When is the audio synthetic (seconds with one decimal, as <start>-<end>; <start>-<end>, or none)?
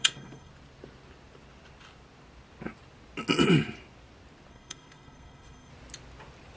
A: 0.0-0.5; 4.5-5.7